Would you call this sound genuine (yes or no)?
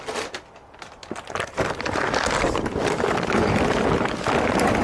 yes